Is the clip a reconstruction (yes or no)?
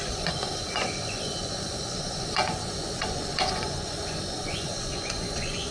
yes